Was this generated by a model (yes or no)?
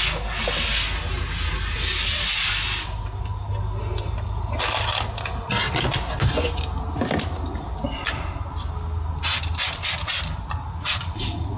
no